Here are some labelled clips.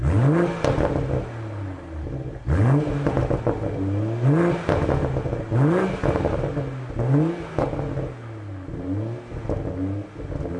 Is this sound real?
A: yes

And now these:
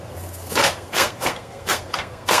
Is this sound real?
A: no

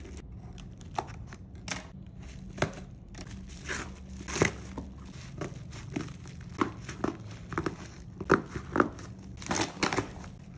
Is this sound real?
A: yes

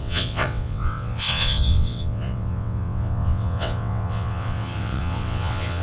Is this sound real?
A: no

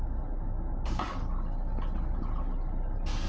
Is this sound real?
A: yes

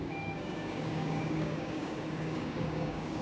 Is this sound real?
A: no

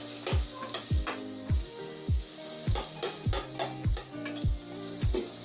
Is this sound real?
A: yes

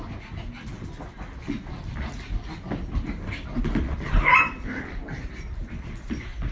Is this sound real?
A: yes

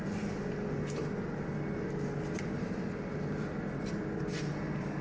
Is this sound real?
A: yes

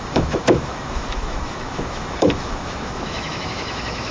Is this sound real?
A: no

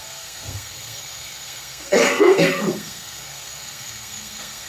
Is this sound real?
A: no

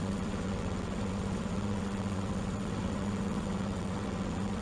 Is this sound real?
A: no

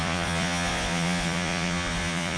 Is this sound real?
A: no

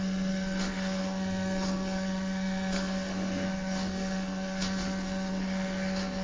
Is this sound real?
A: no